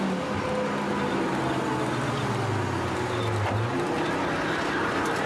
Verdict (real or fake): real